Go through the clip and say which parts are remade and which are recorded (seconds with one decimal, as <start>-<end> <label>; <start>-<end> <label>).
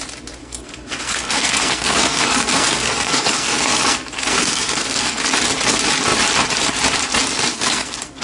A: 0.0-0.4 recorded; 0.4-5.2 remade; 5.2-7.5 recorded; 7.5-8.2 remade